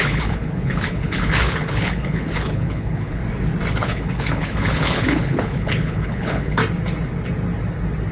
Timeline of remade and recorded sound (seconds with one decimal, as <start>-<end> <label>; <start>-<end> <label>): 0.0-3.2 remade; 3.2-3.7 recorded; 3.7-6.6 remade; 6.6-8.1 recorded